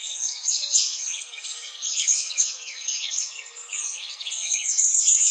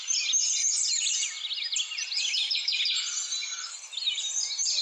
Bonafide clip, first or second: second